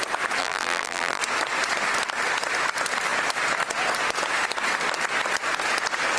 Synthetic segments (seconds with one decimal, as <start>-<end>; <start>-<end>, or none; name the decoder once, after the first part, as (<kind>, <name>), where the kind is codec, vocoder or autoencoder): 0.4-1.2 (vocoder, BigVGAN v2)